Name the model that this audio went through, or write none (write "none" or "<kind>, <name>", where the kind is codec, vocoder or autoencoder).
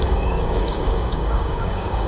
codec, DAC